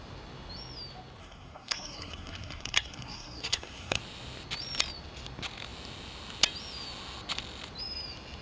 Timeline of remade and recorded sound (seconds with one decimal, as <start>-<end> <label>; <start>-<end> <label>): 0.0-1.2 recorded; 1.2-4.0 remade; 4.0-8.4 recorded